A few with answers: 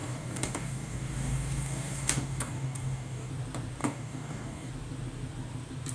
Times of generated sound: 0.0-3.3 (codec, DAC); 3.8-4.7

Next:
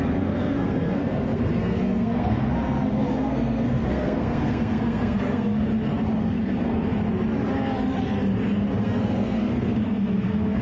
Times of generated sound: 0.0-5.7 (codec, SNAC); 6.2-6.9; 8.8-10.6

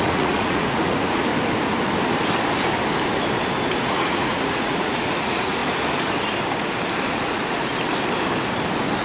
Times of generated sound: 0.0-1.3 (vocoder, Vocos); 3.8-5.6; 7.1-7.7